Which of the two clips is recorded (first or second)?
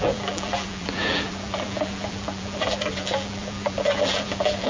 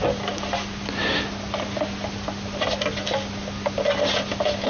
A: second